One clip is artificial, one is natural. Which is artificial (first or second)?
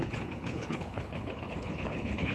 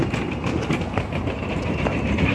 first